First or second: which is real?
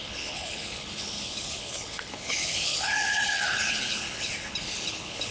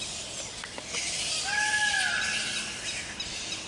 second